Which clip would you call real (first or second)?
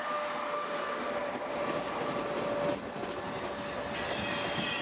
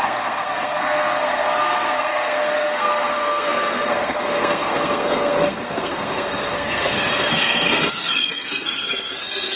first